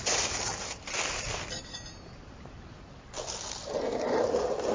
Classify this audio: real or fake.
real